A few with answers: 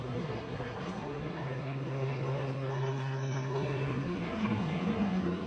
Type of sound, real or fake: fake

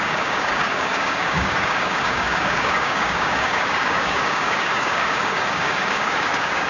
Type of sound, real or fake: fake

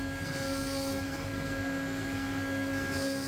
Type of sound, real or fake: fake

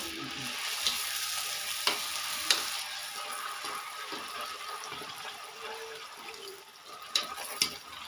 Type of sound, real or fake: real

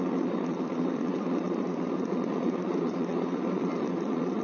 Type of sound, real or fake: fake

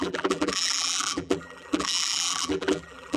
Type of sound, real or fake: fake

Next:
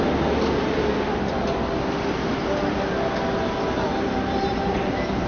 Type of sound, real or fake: real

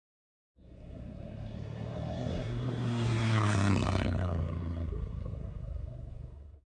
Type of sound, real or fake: fake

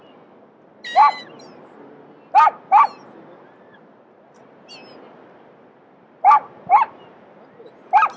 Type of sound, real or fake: real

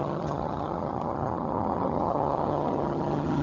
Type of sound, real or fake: fake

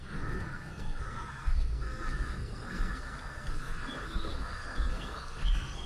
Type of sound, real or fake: fake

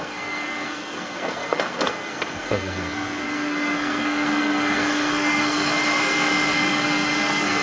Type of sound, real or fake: fake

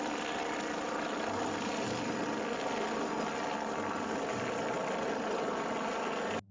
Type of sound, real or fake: real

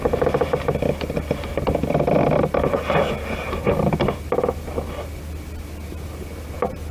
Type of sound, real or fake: real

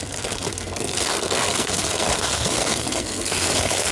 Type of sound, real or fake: fake